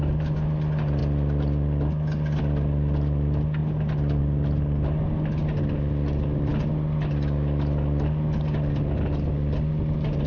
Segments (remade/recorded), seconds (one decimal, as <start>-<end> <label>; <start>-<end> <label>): 0.0-10.3 recorded